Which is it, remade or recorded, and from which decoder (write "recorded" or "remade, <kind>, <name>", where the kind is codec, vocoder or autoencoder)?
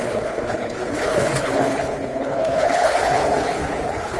remade, codec, HILCodec